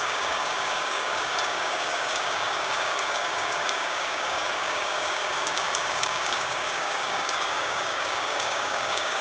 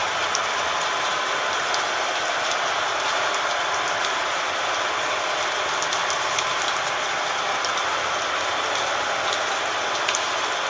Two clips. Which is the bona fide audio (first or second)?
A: second